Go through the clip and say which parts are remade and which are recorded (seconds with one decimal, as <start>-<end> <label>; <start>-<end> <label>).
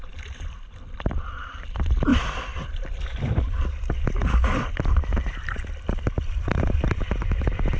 0.0-5.2 remade; 5.2-6.1 recorded; 6.1-7.8 remade